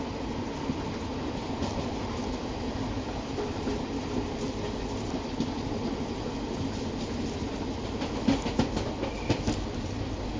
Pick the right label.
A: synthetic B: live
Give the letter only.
B